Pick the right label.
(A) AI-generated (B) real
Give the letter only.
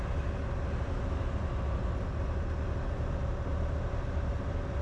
B